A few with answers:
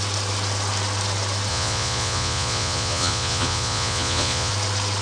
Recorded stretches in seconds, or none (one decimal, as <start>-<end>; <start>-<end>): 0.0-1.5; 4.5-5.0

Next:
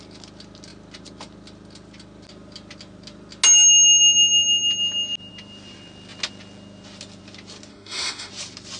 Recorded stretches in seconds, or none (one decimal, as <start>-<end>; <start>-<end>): 0.0-7.7; 8.3-8.8

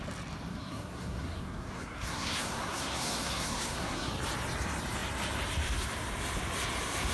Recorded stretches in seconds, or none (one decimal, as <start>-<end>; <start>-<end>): 0.0-0.5; 4.1-7.1

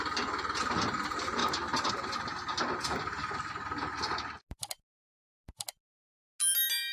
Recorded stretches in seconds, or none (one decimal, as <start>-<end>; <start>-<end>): 0.0-6.9

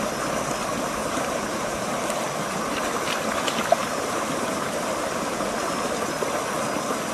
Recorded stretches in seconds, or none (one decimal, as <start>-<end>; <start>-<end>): 0.0-1.0; 2.2-3.8; 4.9-7.1

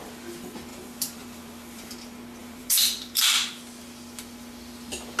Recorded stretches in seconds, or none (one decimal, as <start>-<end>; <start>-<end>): 0.0-0.7; 1.9-2.4; 3.5-5.2